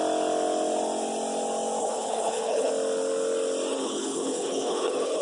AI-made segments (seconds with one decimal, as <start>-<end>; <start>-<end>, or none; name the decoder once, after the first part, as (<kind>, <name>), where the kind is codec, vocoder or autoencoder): 1.8-2.7 (codec, HILCodec); 3.7-5.2